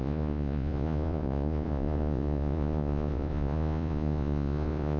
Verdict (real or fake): fake